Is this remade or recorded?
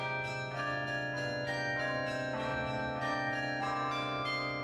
recorded